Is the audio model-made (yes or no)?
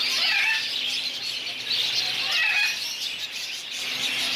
no